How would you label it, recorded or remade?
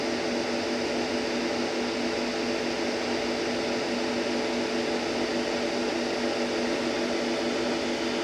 recorded